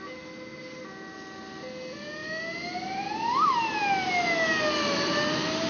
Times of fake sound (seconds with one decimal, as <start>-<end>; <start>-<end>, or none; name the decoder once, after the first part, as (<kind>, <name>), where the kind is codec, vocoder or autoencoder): none